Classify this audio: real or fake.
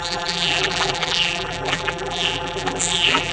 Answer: fake